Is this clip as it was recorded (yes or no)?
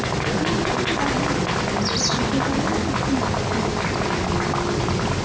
yes